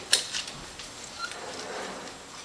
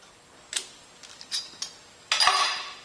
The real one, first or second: second